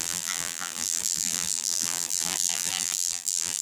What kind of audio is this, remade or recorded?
remade